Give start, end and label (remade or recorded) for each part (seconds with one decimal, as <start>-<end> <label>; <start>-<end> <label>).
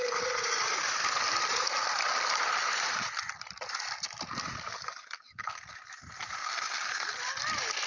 0.0-7.9 recorded